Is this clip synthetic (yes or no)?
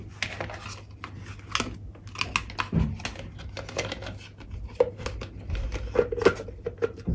no